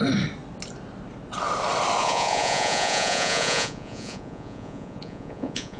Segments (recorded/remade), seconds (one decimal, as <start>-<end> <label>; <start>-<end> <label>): 0.0-2.0 recorded; 2.0-5.8 remade